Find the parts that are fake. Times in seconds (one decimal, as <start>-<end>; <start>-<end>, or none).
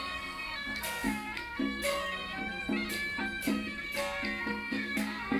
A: 0.0-2.6; 4.4-5.4